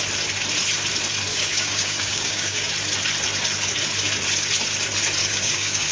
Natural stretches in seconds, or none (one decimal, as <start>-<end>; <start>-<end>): 0.0-1.3; 2.7-5.2